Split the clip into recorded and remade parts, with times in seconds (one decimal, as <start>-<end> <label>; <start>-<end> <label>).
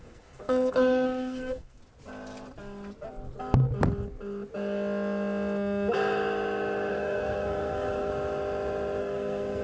0.0-1.8 remade; 1.8-6.9 recorded; 6.9-8.1 remade; 8.1-9.0 recorded; 9.0-9.6 remade